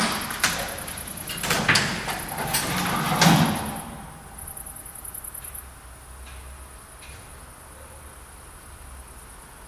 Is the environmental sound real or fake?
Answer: real